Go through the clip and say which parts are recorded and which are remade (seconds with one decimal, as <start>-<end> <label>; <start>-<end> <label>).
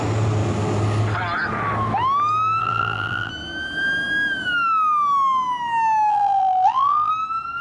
0.0-2.6 recorded; 2.6-3.3 remade; 3.3-6.1 recorded; 6.1-7.1 remade; 7.1-7.6 recorded